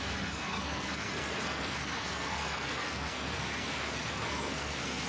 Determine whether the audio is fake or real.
fake